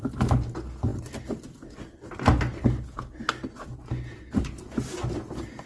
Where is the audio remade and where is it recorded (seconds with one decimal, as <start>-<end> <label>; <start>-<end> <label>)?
0.0-5.7 recorded